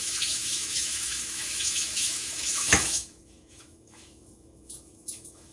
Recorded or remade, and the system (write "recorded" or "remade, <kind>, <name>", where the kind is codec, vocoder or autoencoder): remade, autoencoder, DAC-VAE